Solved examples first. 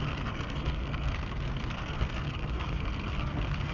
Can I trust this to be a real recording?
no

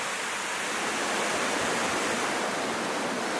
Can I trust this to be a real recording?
yes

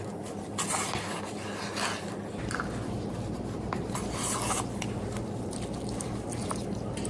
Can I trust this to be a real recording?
yes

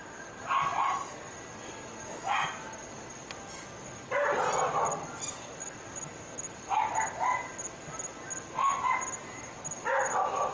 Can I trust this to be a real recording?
yes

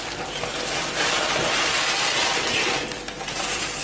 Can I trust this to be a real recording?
yes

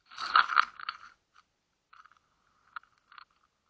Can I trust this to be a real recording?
yes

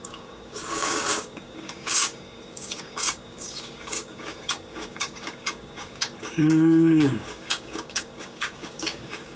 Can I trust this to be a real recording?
no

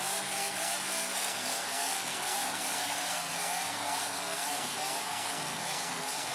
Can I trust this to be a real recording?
no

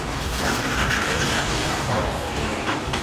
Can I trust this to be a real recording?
no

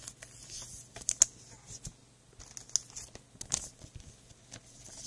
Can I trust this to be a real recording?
yes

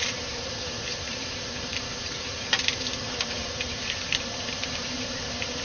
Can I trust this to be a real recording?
no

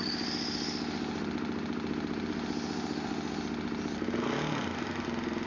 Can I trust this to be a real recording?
yes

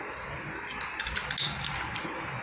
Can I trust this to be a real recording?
yes